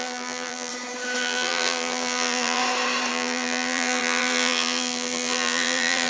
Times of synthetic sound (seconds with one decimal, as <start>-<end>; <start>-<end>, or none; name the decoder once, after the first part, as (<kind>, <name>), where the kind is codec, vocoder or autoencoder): 0.0-0.7 (vocoder, BigVGAN v2); 1.2-2.6; 3.1-6.1